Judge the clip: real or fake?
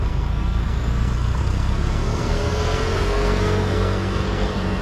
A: fake